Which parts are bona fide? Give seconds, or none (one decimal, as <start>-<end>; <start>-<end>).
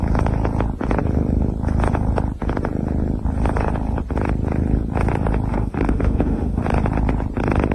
0.0-5.5; 6.6-7.7